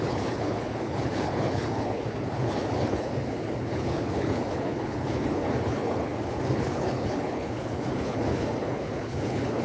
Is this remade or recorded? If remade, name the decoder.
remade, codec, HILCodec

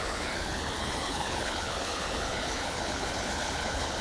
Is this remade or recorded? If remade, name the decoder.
remade, codec, HILCodec